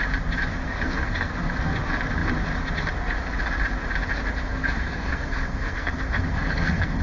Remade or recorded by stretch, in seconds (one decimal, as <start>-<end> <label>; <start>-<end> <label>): 0.0-0.5 recorded; 0.5-1.3 remade; 1.3-4.4 recorded; 4.4-7.0 remade